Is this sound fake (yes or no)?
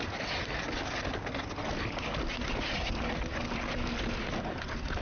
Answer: no